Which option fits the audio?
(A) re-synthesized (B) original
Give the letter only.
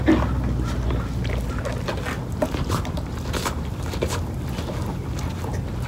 B